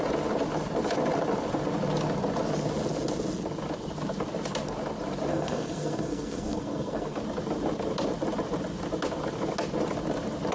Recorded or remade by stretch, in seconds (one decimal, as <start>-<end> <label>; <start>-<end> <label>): 0.0-5.3 recorded; 5.3-7.2 remade; 7.2-10.5 recorded